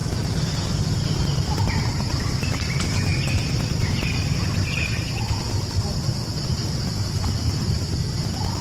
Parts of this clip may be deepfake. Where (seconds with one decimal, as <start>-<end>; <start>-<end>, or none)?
none